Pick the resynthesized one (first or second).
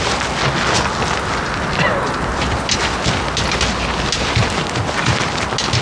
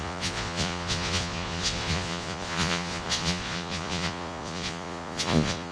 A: second